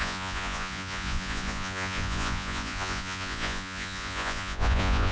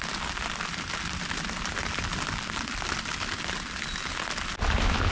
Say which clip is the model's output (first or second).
first